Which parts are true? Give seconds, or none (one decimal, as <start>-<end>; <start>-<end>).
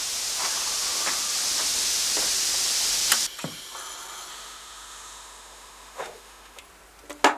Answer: 0.0-4.3; 6.6-7.4